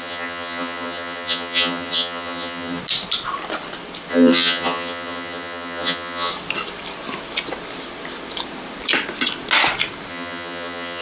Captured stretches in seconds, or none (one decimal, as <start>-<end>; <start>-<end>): 2.8-4.1; 6.3-10.1